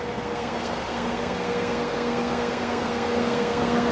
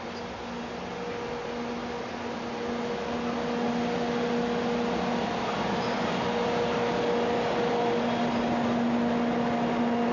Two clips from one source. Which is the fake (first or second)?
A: first